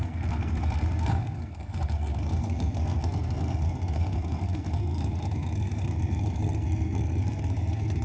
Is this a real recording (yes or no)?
no